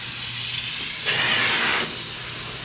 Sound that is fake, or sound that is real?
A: real